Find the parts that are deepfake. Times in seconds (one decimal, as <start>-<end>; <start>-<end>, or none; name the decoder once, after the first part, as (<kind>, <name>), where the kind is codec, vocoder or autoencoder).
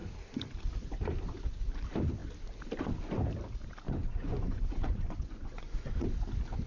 4.2-6.1 (vocoder, Vocos)